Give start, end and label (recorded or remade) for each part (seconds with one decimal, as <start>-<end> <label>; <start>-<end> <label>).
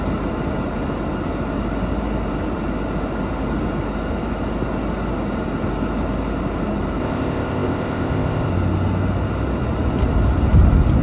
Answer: 0.0-7.0 recorded; 7.0-8.5 remade; 8.5-11.0 recorded